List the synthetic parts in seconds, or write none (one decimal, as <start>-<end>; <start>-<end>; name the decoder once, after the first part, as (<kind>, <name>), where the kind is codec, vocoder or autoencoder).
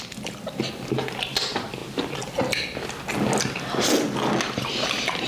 none